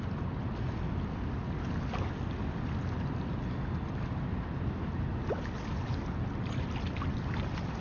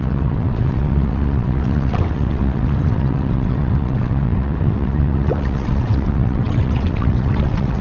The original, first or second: first